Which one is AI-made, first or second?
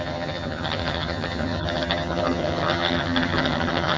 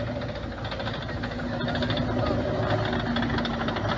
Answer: first